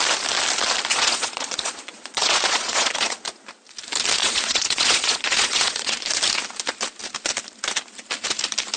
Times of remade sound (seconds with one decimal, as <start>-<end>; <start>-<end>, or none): 0.9-3.2; 4.2-6.0